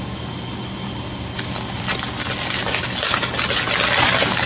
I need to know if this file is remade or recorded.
recorded